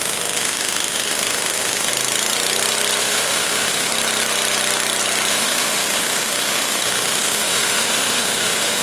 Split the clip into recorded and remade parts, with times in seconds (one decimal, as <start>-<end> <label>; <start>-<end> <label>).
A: 0.0-1.9 remade; 1.9-3.0 recorded; 3.0-3.9 remade; 3.9-5.3 recorded; 5.3-8.8 remade